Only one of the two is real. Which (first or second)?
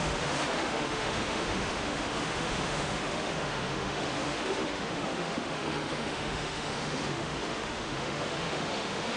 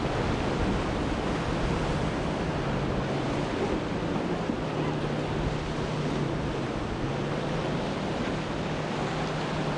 second